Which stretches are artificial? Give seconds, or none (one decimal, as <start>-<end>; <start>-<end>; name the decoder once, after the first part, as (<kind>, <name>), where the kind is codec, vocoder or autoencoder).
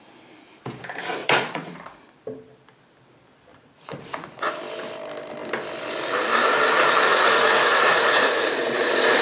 1.2-2.1 (vocoder, Vocos); 3.5-4.6; 7.1-9.2